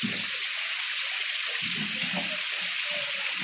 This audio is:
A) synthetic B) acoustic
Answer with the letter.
B